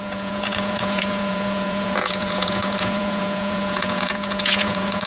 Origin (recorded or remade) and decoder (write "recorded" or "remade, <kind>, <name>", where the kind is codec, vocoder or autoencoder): remade, vocoder, Vocos